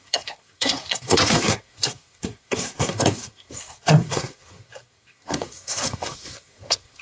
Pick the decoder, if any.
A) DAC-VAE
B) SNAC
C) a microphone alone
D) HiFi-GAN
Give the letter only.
B